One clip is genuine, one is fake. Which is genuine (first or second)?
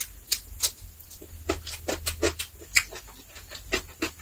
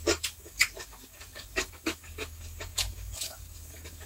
first